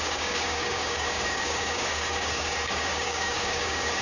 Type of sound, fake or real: fake